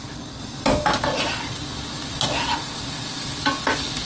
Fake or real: real